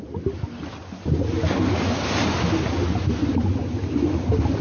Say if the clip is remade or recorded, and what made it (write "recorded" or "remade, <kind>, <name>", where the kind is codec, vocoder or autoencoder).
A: recorded